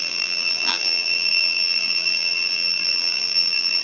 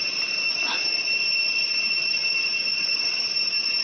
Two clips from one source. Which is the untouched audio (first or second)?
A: second